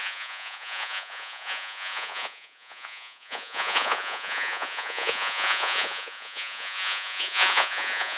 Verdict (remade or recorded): remade